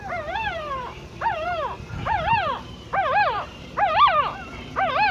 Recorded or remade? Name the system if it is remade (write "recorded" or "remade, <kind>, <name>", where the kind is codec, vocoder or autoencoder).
remade, vocoder, BigVGAN v2